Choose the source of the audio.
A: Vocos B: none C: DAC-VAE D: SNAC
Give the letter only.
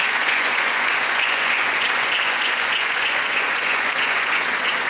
A